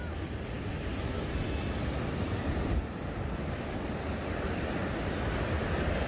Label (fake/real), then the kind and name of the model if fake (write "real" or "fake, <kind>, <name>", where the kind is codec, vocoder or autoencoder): real